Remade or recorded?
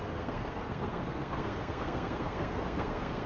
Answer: remade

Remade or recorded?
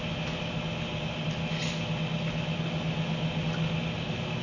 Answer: recorded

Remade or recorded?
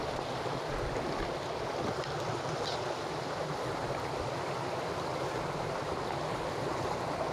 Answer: recorded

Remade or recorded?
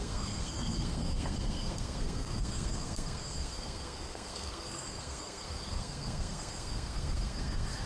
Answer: remade